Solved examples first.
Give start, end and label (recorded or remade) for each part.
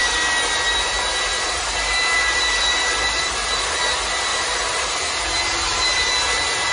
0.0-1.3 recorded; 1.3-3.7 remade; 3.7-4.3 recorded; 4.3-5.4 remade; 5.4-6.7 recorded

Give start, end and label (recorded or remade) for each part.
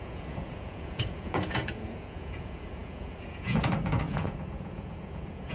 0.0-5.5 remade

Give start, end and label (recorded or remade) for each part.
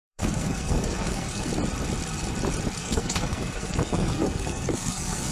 0.0-1.5 remade; 1.5-2.8 recorded; 2.8-5.3 remade